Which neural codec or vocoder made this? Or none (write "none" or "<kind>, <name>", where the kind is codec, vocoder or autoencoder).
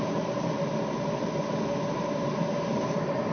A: none